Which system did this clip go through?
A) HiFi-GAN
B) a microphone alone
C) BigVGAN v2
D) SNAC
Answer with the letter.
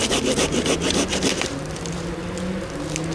B